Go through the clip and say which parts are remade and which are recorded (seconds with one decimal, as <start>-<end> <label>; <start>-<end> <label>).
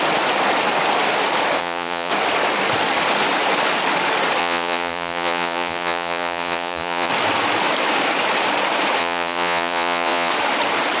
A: 0.0-1.6 recorded; 1.6-2.1 remade; 2.1-4.4 recorded; 4.4-7.1 remade; 7.1-9.0 recorded; 9.0-10.3 remade; 10.3-11.0 recorded